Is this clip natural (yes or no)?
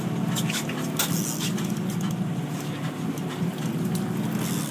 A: yes